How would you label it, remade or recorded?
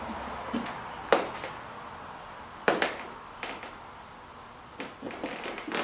recorded